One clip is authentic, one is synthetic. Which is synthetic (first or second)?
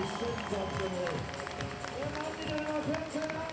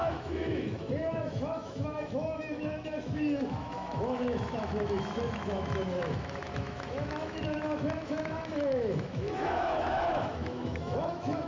second